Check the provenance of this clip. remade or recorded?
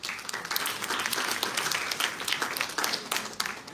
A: recorded